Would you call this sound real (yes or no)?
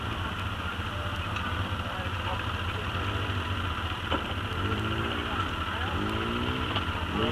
yes